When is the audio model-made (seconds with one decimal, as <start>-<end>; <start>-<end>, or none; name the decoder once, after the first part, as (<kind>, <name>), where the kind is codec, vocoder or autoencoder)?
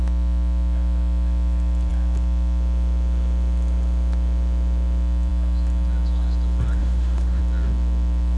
6.8-7.4 (autoencoder, DAC-VAE)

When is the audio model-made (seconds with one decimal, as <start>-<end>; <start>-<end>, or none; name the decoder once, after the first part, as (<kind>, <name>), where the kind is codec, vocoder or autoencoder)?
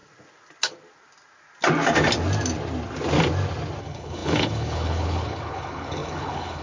3.8-6.6 (codec, HILCodec)